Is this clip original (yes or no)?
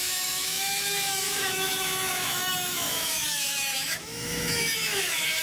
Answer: no